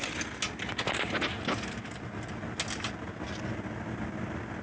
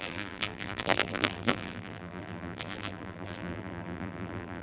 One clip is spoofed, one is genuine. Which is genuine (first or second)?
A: first